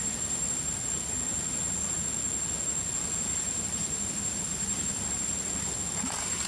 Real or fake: real